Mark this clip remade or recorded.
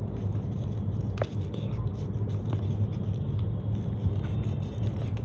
recorded